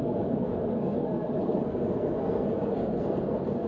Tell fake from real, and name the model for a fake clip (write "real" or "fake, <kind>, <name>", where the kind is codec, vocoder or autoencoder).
fake, codec, SNAC